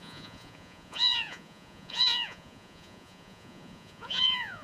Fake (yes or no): yes